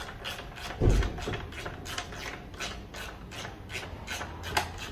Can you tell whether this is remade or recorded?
recorded